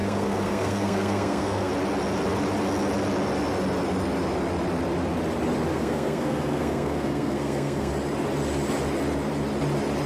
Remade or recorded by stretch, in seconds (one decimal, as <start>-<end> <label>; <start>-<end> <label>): 0.0-1.7 remade; 1.7-5.7 recorded; 5.7-7.9 remade; 7.9-10.1 recorded